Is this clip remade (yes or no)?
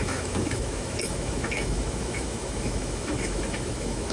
yes